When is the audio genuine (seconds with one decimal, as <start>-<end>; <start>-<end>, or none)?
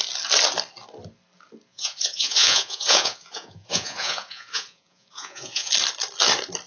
0.0-1.7; 5.7-6.7